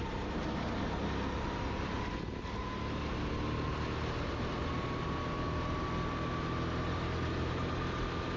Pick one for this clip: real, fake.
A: real